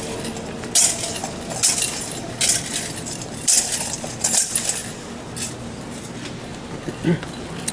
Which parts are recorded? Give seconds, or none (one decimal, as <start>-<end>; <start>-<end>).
0.0-7.7